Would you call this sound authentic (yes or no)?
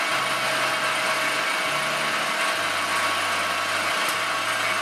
yes